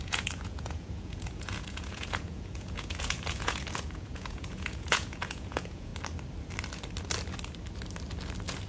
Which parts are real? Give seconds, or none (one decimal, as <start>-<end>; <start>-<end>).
5.9-8.7